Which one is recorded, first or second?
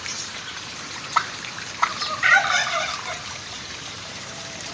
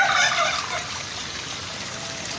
second